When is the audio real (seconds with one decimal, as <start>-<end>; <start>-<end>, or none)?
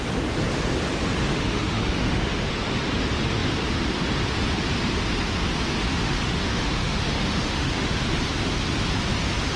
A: 0.0-1.3; 2.5-5.9; 8.0-9.6